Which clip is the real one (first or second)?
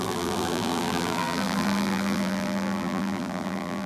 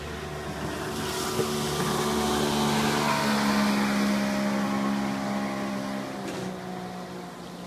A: second